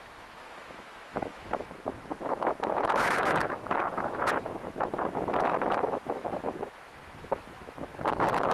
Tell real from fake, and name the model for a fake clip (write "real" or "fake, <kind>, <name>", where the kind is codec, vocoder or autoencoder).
fake, autoencoder, DAC-VAE